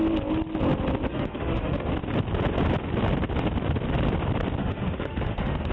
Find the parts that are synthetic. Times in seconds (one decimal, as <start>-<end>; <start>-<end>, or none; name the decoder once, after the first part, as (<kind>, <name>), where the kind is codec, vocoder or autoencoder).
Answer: 1.1-1.9 (autoencoder, DAC-VAE); 4.6-5.7